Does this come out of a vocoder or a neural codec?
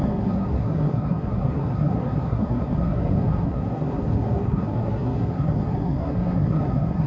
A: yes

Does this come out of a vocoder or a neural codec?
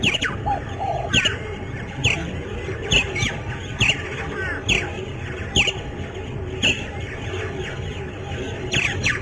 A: no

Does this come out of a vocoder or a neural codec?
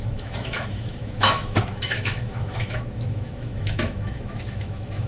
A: yes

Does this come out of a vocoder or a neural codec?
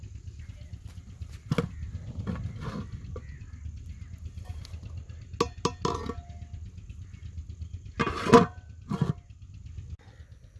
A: no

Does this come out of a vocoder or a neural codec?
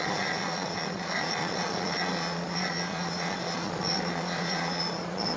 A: yes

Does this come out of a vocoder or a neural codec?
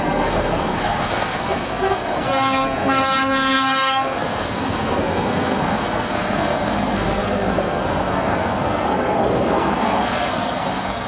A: yes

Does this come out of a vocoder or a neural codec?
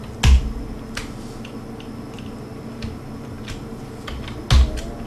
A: no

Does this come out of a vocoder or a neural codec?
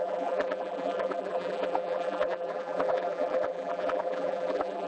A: yes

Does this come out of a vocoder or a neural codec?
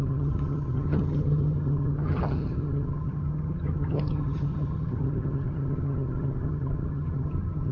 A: yes